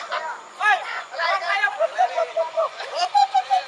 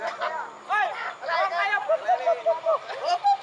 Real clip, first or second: second